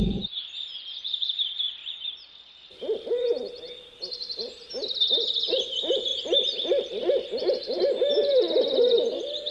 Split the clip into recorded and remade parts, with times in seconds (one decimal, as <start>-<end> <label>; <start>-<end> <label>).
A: 0.0-1.8 remade; 1.8-5.5 recorded; 5.5-9.5 remade